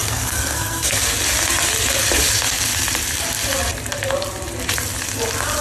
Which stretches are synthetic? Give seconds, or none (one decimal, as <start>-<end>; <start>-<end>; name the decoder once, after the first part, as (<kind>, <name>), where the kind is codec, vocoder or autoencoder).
0.0-1.0 (codec, SNAC)